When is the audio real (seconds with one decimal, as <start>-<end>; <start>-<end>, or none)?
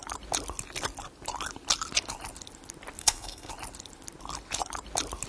0.0-3.0; 3.5-5.3